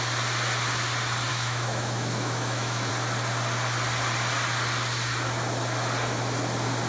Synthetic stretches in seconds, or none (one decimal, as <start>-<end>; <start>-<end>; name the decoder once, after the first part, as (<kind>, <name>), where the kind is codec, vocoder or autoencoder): 1.3-2.9 (autoencoder, DAC-VAE)